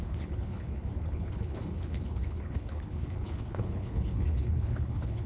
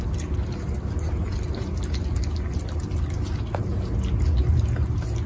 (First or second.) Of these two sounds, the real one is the second